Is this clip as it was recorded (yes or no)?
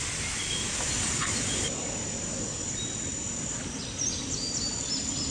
yes